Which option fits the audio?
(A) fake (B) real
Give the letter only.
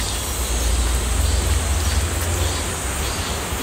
B